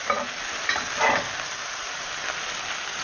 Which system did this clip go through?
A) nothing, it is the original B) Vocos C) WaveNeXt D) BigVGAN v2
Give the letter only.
A